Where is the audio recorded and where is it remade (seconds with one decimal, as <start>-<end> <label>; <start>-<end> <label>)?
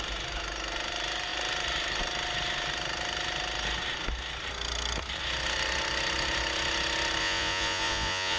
0.0-7.2 recorded; 7.2-8.4 remade